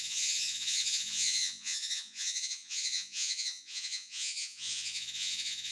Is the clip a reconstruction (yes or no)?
yes